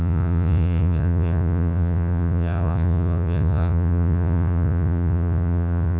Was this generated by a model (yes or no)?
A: yes